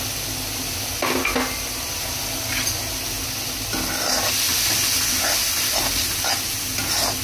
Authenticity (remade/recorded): recorded